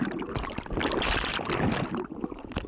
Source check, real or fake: real